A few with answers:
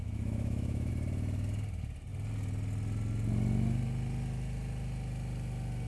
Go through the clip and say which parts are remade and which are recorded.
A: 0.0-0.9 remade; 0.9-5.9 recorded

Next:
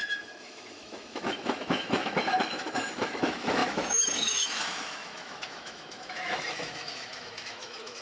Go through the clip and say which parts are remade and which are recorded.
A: 0.0-8.0 remade

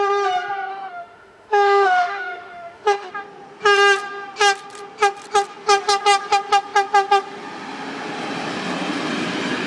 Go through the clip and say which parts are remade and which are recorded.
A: 0.0-0.7 recorded; 0.7-3.1 remade; 3.1-9.7 recorded

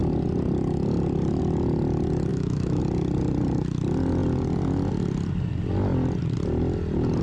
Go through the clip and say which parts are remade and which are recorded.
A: 0.0-2.3 recorded; 2.3-2.8 remade; 2.8-7.2 recorded